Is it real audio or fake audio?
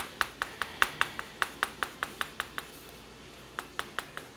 real